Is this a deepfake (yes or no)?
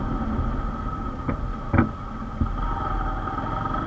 no